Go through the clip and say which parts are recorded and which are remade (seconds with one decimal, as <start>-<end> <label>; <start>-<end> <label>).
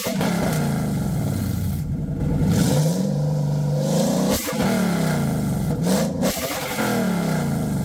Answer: 0.0-1.5 recorded; 1.5-2.1 remade; 2.1-2.6 recorded; 2.6-4.3 remade; 4.3-7.8 recorded